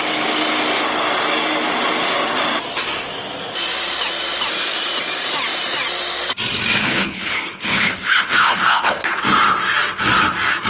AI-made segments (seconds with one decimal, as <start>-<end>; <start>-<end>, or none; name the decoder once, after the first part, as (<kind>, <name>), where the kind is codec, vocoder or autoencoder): 6.8-9.2 (codec, HILCodec)

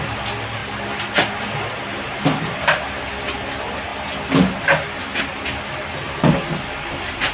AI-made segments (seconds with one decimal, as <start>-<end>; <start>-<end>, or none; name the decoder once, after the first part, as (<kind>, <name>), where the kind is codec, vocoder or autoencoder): none

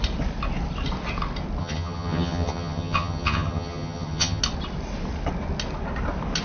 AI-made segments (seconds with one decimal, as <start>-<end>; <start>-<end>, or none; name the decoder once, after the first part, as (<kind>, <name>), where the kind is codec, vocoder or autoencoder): 1.6-4.4 (vocoder, HiFi-GAN)

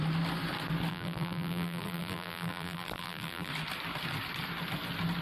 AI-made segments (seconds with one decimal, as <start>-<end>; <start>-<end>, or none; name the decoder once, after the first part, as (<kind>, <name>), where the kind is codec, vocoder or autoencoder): 0.9-3.5 (vocoder, BigVGAN v2)

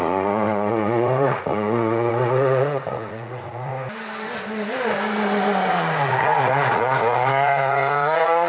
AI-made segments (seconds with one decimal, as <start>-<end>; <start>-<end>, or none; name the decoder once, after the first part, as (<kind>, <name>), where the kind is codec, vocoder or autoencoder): 0.0-3.7 (vocoder, Vocos); 5.7-8.5

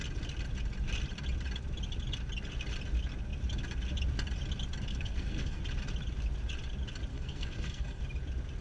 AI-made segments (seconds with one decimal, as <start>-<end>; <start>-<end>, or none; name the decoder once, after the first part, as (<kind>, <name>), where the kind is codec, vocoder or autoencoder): 4.9-5.6 (codec, SNAC); 7.1-8.0